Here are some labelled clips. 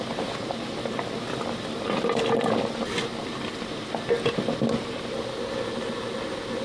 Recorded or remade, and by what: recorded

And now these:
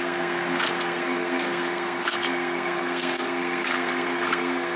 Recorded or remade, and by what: remade, codec, SNAC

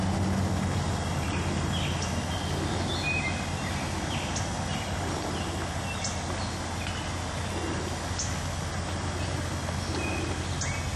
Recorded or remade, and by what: recorded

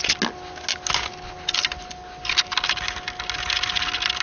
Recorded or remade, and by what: recorded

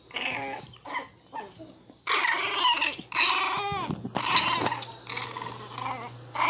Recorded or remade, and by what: recorded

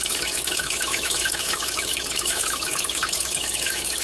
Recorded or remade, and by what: remade, autoencoder, DAC-VAE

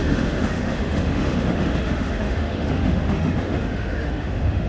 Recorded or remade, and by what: remade, autoencoder, DAC-VAE